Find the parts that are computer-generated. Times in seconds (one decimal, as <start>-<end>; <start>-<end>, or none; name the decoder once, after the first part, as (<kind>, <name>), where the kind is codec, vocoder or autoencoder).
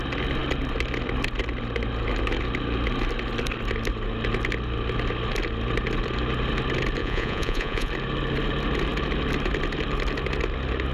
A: 7.0-7.9 (vocoder, Vocos)